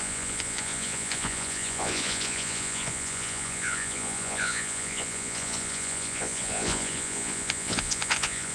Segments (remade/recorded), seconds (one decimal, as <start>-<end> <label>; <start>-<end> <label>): 0.0-8.5 remade